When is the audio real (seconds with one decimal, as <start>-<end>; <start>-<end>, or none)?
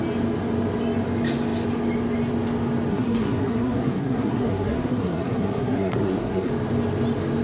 0.0-2.9; 6.5-7.4